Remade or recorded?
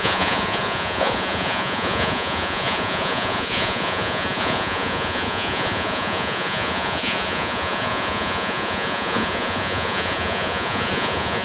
remade